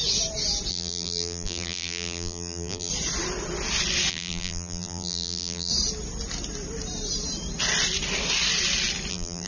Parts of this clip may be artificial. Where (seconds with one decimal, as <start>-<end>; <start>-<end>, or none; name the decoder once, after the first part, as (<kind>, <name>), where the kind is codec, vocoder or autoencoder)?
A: 0.7-2.9 (vocoder, BigVGAN v2); 4.1-5.7; 9.1-9.5

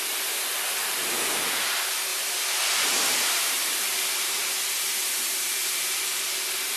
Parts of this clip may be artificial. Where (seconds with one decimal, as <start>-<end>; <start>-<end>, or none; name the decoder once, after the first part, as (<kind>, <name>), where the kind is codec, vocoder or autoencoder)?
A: 0.8-1.3 (vocoder, BigVGAN v2); 2.1-6.2

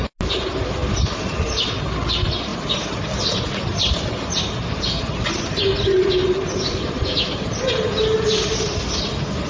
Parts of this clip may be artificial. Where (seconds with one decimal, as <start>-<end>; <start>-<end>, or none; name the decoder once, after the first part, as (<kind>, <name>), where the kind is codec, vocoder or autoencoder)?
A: none

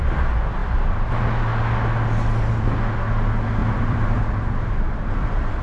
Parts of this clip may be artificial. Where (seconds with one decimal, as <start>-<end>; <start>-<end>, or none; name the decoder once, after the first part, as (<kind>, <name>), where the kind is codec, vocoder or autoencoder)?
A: 0.6-1.1 (vocoder, BigVGAN v2); 3.6-4.2